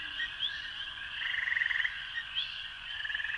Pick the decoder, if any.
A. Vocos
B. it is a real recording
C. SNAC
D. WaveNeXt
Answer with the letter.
A